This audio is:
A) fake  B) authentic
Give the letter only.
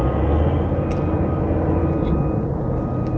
B